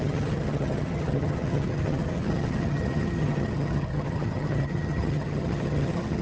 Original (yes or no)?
no